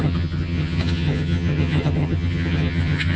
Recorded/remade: remade